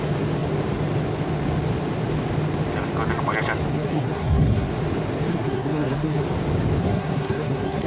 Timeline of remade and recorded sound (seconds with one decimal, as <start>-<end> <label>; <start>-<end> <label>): 0.0-3.7 recorded; 3.7-4.7 remade; 4.7-5.3 recorded; 5.3-6.2 remade; 6.2-6.8 recorded; 6.8-7.9 remade